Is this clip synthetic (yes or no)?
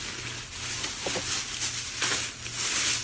no